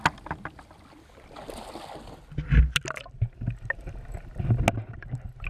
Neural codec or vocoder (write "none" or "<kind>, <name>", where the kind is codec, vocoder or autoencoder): none